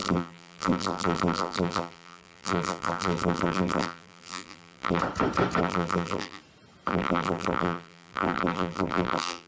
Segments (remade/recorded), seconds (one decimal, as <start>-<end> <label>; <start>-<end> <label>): 0.0-5.0 remade; 5.0-5.6 recorded; 5.6-6.4 remade; 6.4-6.9 recorded; 6.9-9.5 remade